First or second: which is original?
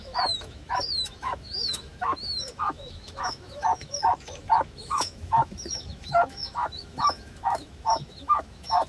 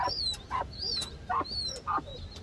second